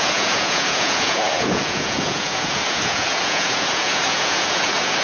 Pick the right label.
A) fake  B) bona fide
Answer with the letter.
A